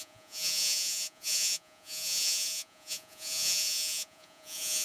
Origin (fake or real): fake